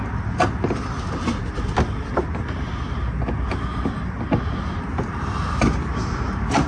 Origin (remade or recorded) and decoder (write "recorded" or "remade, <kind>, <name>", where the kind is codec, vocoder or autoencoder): recorded